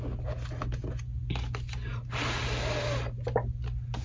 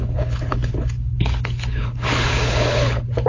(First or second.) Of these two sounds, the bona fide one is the first